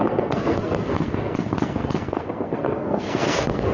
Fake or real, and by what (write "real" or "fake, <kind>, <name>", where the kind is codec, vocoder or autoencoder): fake, codec, SNAC